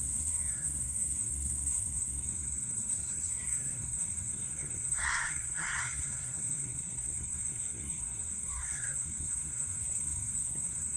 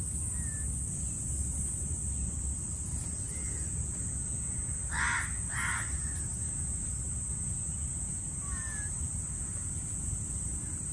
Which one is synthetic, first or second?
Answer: first